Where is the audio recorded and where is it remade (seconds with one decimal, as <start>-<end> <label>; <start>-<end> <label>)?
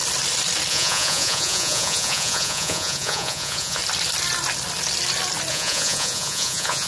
0.0-0.7 recorded; 0.7-3.8 remade; 3.8-5.5 recorded; 5.5-6.9 remade